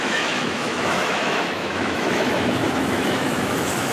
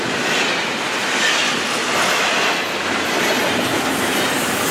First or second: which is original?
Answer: second